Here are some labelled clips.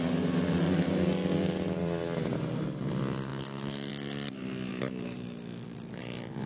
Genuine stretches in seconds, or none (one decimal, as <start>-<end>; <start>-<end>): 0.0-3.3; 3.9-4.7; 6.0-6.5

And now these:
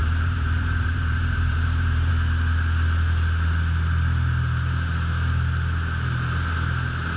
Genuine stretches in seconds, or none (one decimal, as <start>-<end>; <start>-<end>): 2.1-7.2

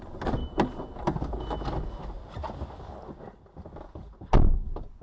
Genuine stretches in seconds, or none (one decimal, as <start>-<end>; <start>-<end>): 0.0-5.0

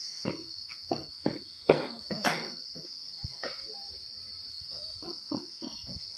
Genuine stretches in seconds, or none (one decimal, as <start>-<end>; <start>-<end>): 3.7-4.5

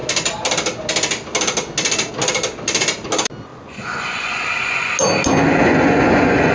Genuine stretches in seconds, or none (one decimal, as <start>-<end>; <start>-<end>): 0.0-3.5; 4.9-5.6

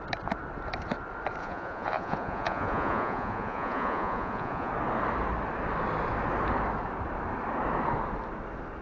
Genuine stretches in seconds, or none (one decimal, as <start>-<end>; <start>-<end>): 0.0-1.4; 4.7-8.8

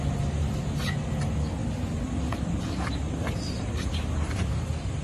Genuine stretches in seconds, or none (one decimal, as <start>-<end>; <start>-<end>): 0.0-5.0